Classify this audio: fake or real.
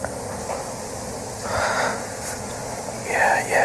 real